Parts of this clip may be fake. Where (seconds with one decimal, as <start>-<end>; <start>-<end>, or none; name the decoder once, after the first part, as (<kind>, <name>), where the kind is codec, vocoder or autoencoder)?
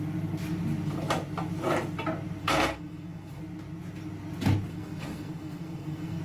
2.4-3.4 (codec, SNAC); 4.7-6.2